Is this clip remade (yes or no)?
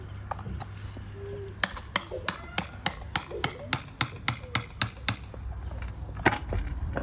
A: no